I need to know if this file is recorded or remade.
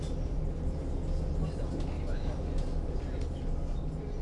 recorded